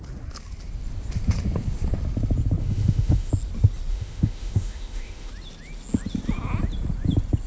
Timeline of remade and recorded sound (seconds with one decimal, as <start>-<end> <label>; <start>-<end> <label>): 0.0-2.6 recorded; 2.6-3.3 remade; 3.3-3.9 recorded; 3.9-5.3 remade; 5.3-7.5 recorded